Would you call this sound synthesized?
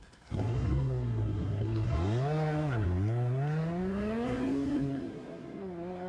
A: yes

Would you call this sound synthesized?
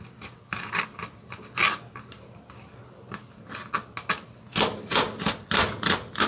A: no